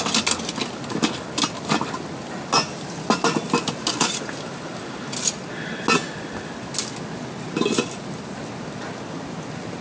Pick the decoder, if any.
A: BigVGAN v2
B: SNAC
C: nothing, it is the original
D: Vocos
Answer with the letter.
C